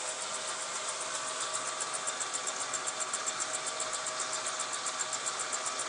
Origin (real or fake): real